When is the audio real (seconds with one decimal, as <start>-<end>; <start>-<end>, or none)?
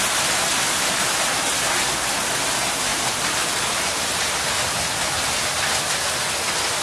0.0-2.9; 4.1-6.8